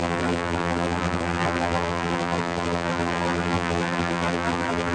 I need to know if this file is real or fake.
fake